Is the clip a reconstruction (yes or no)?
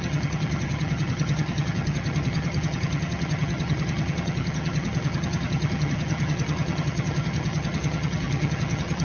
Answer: yes